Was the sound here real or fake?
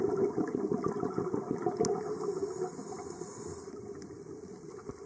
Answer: real